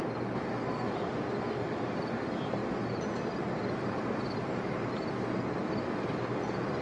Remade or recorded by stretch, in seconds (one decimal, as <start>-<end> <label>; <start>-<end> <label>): 0.0-6.8 recorded